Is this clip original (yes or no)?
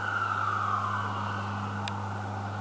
yes